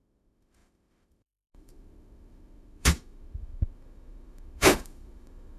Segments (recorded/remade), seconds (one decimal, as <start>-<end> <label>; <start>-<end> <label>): 0.0-5.6 remade